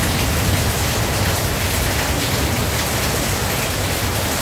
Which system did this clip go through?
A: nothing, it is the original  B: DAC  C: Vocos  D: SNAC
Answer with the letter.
A